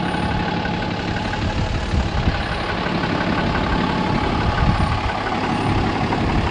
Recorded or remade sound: recorded